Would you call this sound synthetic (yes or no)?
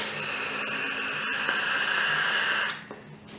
no